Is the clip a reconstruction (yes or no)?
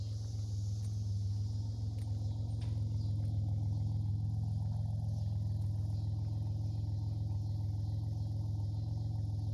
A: no